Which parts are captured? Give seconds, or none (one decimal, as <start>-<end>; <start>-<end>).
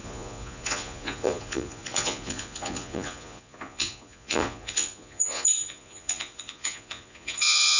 none